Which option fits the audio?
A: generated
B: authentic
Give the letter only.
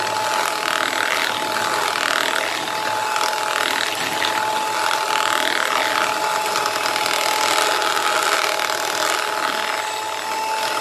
B